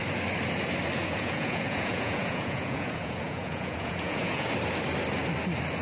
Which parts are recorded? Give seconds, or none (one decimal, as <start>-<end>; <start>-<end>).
0.0-1.0; 4.5-5.8